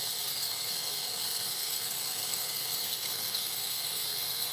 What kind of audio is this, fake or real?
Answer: fake